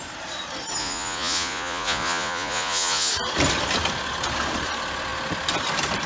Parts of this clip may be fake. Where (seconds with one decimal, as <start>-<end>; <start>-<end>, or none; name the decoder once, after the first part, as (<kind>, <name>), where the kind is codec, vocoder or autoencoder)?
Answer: 0.8-3.1 (vocoder, Vocos)